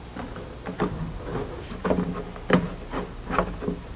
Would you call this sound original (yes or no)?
yes